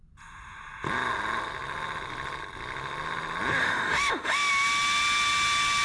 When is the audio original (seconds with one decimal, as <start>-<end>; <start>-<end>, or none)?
0.0-3.6; 4.5-5.8